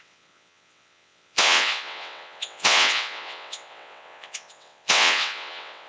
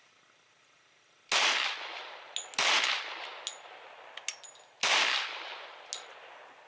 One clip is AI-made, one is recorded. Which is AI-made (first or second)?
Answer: first